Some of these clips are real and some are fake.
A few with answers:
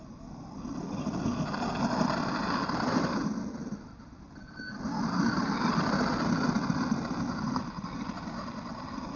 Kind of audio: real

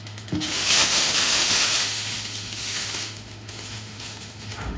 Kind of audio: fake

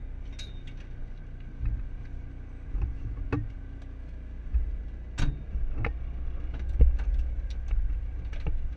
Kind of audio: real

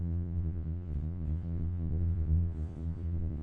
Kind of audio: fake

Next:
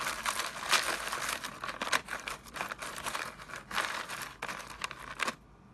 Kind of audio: real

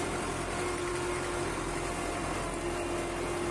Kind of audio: real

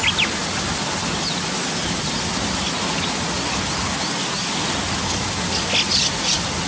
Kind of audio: real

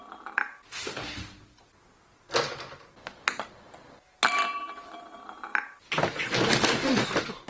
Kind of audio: real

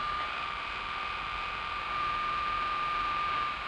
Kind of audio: real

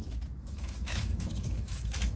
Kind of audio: fake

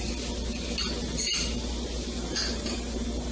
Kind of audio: real